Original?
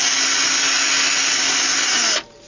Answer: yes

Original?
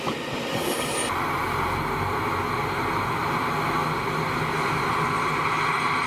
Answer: yes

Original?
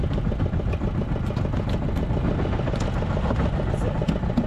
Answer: yes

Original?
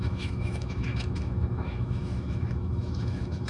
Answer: no